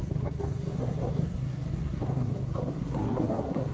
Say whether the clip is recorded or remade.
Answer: remade